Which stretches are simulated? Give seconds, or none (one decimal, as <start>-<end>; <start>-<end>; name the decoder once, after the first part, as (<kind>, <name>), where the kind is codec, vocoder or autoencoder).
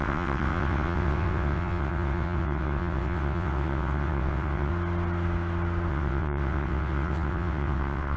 0.0-4.7 (vocoder, WaveNeXt); 5.9-8.2